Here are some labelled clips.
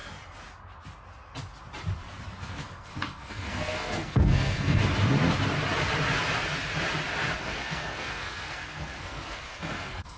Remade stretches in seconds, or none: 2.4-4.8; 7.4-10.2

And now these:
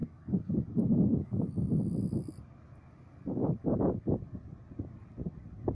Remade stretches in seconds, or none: 0.0-1.5; 3.6-4.2

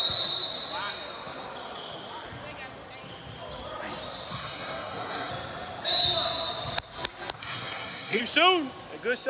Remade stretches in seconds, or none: 4.3-5.3; 7.4-8.2